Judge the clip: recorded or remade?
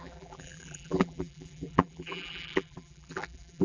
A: remade